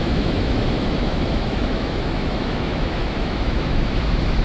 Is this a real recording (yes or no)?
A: no